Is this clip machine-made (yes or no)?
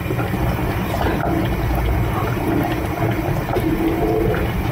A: no